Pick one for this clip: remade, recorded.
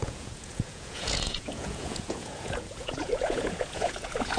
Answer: remade